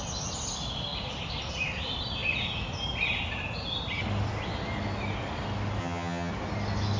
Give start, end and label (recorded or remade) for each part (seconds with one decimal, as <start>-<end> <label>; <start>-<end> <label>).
0.0-5.8 recorded; 5.8-6.3 remade; 6.3-7.0 recorded